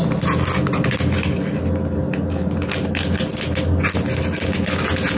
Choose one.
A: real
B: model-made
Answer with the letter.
A